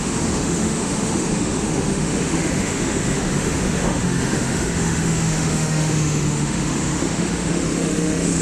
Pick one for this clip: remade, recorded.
remade